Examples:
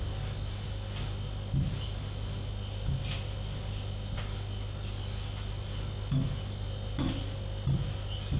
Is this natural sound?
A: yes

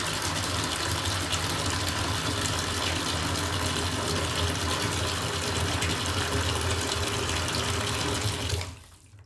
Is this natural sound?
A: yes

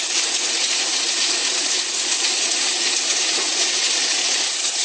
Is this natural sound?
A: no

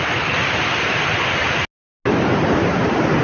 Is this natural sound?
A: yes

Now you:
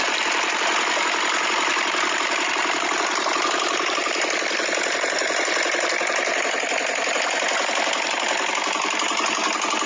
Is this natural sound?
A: yes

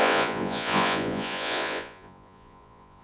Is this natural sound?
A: no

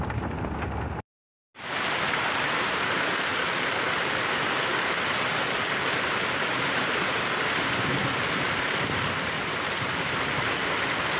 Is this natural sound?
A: yes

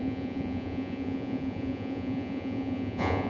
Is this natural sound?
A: no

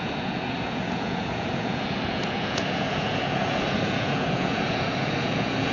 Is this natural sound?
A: no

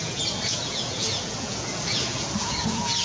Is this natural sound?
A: no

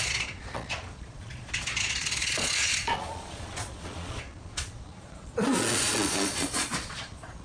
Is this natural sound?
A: no